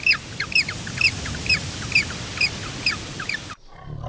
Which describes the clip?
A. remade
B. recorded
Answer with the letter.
B